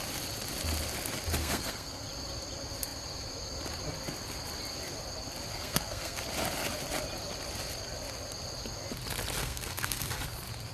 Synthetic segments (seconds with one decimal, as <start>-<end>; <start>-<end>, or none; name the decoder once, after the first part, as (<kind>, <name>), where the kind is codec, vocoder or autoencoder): 1.4-2.0 (codec, SNAC); 5.5-6.2; 9.4-10.2

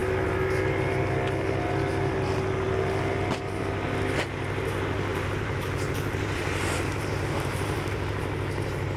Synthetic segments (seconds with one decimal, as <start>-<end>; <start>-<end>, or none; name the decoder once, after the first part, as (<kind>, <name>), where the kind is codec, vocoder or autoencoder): 5.1-8.2 (vocoder, BigVGAN v2)

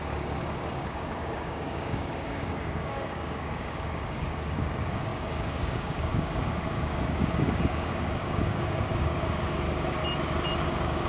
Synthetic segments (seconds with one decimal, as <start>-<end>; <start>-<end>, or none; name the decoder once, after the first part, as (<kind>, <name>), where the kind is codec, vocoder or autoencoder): 0.0-10.0 (codec, DAC); 10.7-11.1

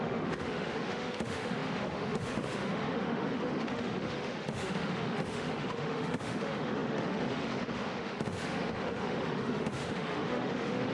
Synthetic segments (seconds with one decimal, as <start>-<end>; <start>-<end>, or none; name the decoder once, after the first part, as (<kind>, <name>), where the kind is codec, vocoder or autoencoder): 0.0-10.9 (autoencoder, DAC-VAE)

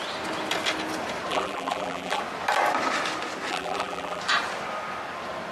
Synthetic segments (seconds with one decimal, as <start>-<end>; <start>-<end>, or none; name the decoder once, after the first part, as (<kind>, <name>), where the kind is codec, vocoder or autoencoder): 1.3-2.2 (vocoder, BigVGAN v2); 3.5-4.2